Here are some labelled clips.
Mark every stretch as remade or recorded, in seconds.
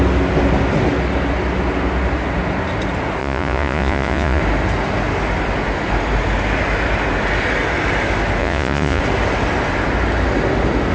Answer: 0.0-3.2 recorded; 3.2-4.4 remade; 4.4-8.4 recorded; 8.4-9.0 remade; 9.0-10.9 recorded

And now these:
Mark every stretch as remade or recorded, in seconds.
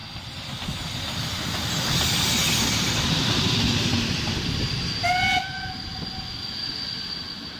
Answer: 0.0-7.6 recorded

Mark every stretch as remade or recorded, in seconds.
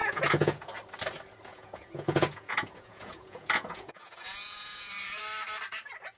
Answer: 0.0-0.7 remade; 0.7-1.5 recorded; 1.5-5.2 remade; 5.2-6.2 recorded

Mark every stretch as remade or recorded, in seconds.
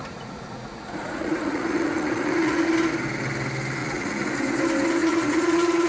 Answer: 0.0-2.7 remade; 2.7-3.8 recorded; 3.8-4.3 remade; 4.3-5.0 recorded; 5.0-5.9 remade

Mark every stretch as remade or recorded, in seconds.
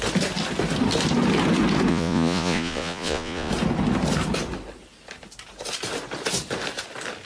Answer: 0.0-1.9 recorded; 1.9-3.5 remade; 3.5-7.3 recorded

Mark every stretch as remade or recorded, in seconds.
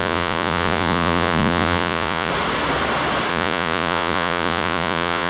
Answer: 0.0-2.3 remade; 2.3-3.3 recorded; 3.3-5.3 remade